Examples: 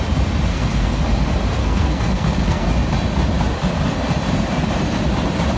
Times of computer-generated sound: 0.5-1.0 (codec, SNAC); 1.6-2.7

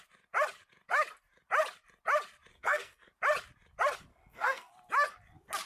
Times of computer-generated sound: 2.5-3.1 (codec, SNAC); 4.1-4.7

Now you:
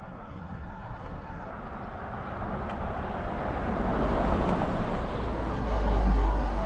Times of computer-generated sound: 0.0-1.5 (codec, SNAC); 5.5-6.7